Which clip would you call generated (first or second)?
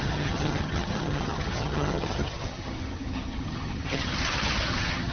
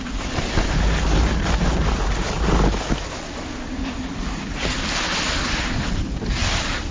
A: first